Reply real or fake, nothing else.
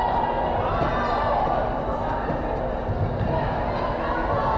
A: real